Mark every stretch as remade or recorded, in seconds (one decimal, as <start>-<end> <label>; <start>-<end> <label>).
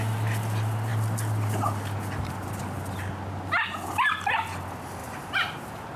0.0-5.0 recorded; 5.0-6.0 remade